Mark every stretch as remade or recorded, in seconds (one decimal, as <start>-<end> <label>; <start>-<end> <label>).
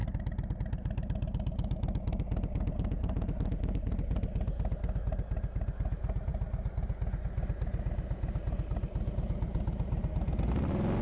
0.0-11.0 recorded